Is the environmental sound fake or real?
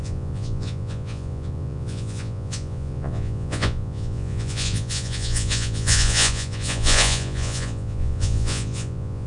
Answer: fake